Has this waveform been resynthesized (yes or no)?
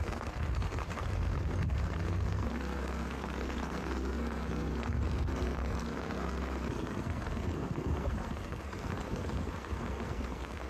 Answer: yes